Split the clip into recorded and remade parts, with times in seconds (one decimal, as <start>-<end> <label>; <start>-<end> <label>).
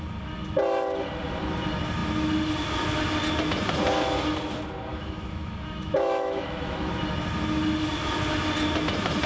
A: 0.0-4.9 recorded; 4.9-6.9 remade; 6.9-9.3 recorded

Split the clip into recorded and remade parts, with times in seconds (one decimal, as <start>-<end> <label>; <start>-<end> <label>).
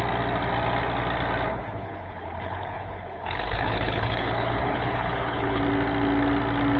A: 0.0-1.5 recorded; 1.5-5.6 remade; 5.6-6.8 recorded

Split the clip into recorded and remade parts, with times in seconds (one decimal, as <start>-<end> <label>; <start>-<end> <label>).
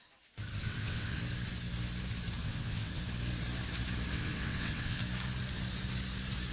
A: 0.0-0.6 recorded; 0.6-1.2 remade; 1.2-2.4 recorded; 2.4-3.0 remade; 3.0-4.1 recorded; 4.1-5.0 remade; 5.0-6.5 recorded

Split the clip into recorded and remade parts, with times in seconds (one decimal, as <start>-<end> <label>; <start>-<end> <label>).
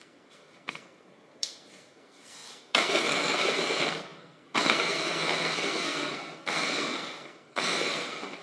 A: 0.0-8.4 remade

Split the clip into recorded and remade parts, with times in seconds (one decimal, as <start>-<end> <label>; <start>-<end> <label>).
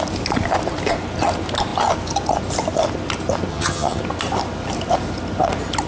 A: 0.0-3.5 recorded; 3.5-4.0 remade; 4.0-5.9 recorded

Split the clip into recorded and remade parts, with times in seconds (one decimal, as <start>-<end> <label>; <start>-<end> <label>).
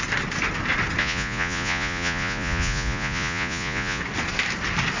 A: 0.0-1.0 recorded; 1.0-4.0 remade; 4.0-5.0 recorded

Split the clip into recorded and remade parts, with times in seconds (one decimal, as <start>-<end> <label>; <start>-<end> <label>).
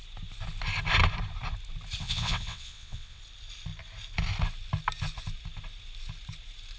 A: 0.0-2.0 recorded; 2.0-3.2 remade; 3.2-6.8 recorded